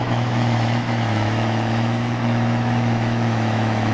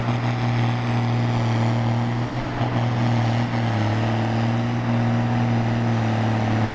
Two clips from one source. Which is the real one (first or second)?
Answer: second